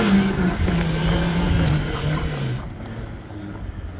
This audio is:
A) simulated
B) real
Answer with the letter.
B